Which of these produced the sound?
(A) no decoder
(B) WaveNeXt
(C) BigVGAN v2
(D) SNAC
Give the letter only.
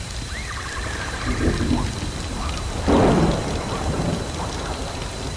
A